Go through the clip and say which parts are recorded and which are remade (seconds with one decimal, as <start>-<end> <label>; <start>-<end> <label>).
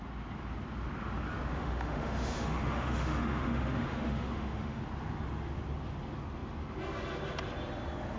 0.0-1.5 recorded; 1.5-4.8 remade; 4.8-8.2 recorded